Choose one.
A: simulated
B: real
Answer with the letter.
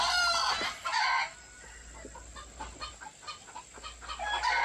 B